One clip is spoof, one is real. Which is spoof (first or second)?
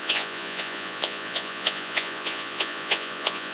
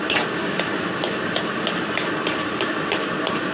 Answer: first